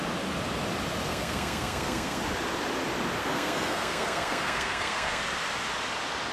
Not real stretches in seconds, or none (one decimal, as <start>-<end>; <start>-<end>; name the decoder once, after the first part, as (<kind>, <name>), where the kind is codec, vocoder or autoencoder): 1.1-2.2 (codec, SNAC); 3.2-5.2